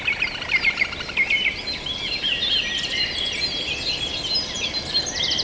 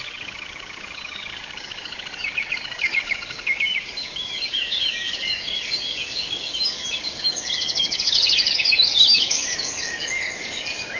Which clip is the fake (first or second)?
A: second